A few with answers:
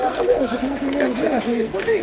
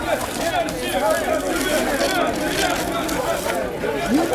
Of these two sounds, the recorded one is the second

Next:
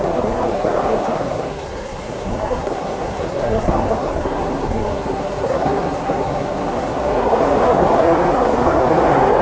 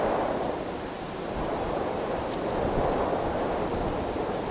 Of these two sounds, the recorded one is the second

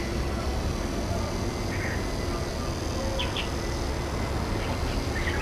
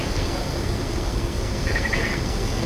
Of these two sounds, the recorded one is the first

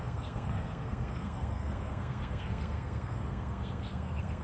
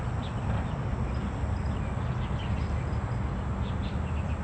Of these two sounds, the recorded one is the second